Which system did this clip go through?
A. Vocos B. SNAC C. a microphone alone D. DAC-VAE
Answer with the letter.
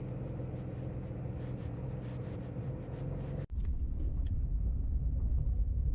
C